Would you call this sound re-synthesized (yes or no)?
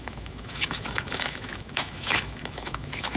yes